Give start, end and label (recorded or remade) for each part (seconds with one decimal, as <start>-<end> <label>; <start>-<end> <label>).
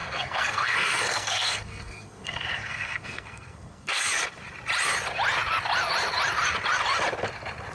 0.0-4.1 remade; 4.1-7.7 recorded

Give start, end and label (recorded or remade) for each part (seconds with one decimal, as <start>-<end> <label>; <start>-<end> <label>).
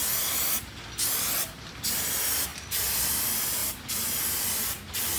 0.0-5.2 recorded